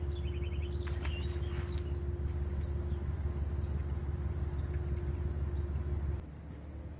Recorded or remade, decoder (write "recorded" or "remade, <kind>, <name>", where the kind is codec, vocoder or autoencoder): recorded